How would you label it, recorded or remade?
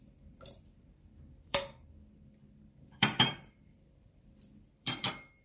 remade